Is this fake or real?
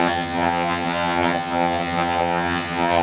fake